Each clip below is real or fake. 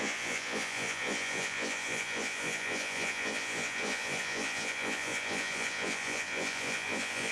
fake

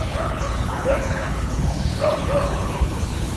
fake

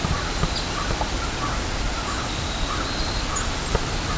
real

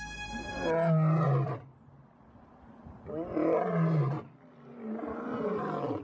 real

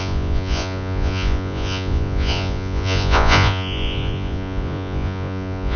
fake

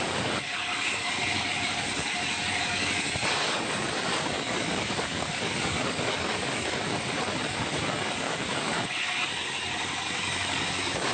fake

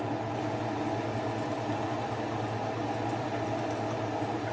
real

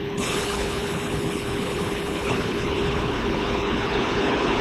fake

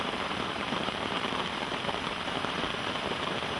fake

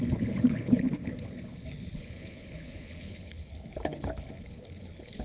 fake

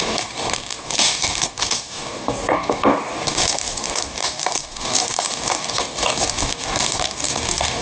fake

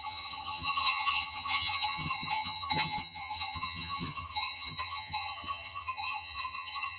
fake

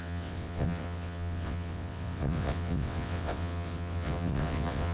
fake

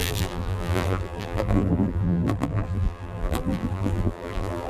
fake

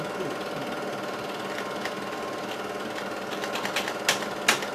real